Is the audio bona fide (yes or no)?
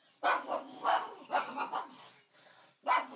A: yes